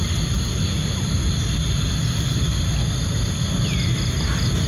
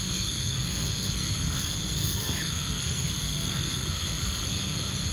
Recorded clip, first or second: first